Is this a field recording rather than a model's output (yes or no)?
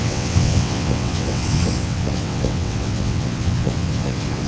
no